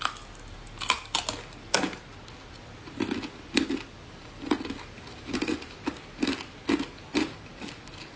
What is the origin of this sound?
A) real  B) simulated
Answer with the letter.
A